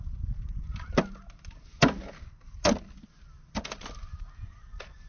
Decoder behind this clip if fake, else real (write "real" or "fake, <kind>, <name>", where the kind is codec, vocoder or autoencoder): real